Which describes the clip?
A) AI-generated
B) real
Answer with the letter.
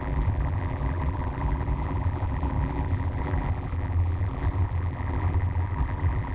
A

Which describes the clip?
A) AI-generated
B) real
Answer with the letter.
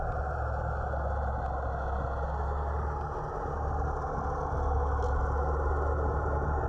B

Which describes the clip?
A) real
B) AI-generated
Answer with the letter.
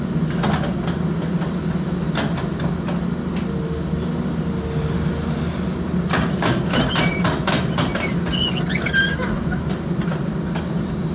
A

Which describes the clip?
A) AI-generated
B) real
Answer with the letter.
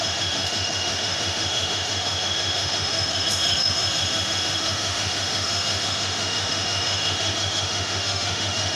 A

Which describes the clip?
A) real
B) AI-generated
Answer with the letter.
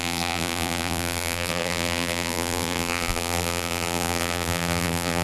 B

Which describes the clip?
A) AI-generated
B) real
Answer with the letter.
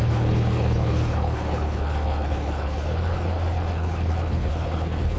A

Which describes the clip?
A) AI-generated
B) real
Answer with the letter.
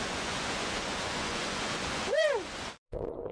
A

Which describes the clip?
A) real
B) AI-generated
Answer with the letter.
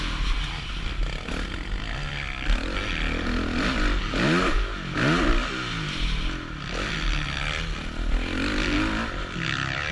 A